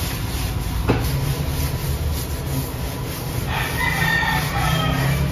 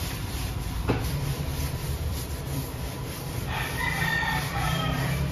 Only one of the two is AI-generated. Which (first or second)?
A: second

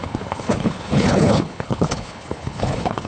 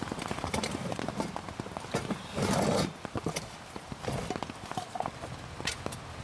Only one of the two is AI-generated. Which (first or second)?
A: first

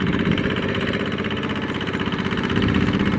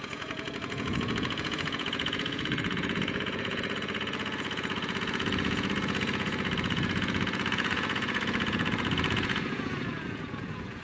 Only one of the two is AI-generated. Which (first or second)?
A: second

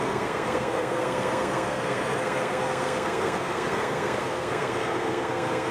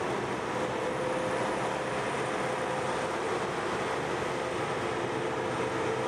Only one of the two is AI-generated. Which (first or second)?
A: first